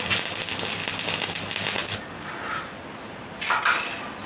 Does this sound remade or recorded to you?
recorded